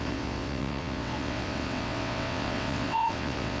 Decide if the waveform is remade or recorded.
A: remade